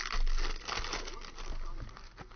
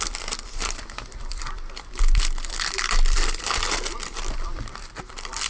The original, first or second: first